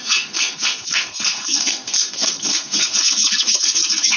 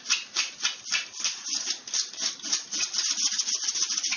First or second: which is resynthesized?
first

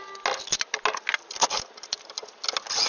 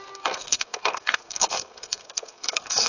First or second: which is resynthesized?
second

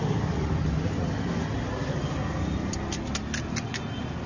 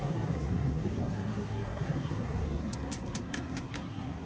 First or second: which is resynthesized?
second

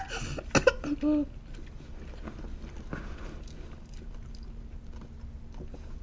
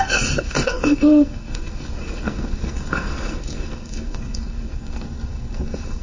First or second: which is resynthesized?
second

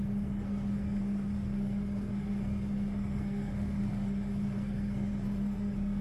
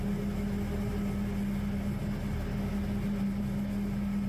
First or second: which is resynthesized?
first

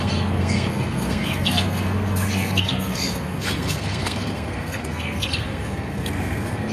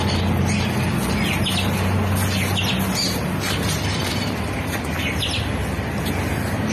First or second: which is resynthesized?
first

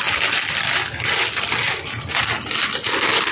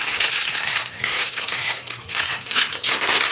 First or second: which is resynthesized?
second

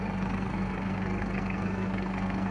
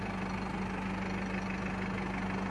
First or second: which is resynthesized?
first